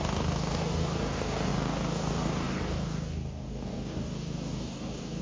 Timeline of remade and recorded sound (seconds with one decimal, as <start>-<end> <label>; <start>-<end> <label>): 0.0-5.2 remade

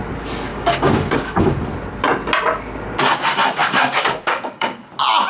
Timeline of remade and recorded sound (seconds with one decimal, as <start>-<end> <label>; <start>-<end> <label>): 0.0-0.5 recorded; 0.5-1.6 remade; 1.6-3.6 recorded; 3.6-4.8 remade; 4.8-5.3 recorded

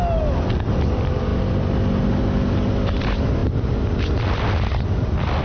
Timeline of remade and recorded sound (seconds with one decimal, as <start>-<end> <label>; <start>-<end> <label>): 0.0-5.4 recorded

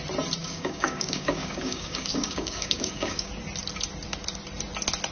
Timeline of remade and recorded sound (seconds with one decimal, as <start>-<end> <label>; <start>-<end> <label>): 0.0-0.4 recorded; 0.4-3.3 remade; 3.3-5.1 recorded

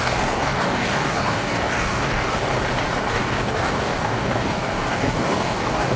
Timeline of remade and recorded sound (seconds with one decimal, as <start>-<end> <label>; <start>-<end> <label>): 0.0-2.5 remade; 2.5-3.1 recorded; 3.1-6.0 remade

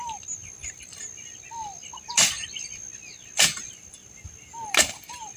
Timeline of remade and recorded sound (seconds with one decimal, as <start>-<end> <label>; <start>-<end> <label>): 0.0-5.4 recorded